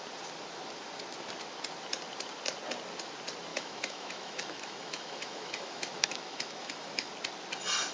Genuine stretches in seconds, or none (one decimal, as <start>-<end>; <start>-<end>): 0.0-3.5; 7.1-7.9